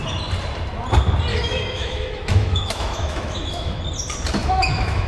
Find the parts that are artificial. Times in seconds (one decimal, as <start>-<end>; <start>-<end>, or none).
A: 1.3-3.8; 4.4-5.1